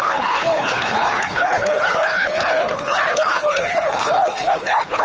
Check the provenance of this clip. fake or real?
fake